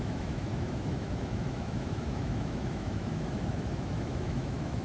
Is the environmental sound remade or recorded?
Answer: remade